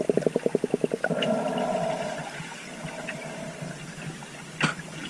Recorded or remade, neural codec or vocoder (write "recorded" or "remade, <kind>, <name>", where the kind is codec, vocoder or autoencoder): recorded